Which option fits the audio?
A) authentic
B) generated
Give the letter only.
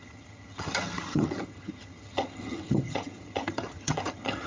B